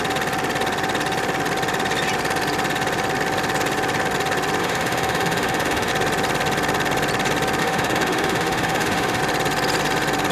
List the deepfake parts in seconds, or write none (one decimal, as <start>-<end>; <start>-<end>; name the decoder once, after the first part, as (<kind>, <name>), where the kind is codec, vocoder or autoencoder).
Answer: 4.6-5.9 (autoencoder, DAC-VAE); 7.6-9.2